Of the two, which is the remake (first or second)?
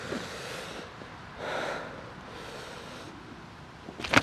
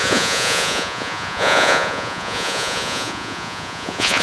second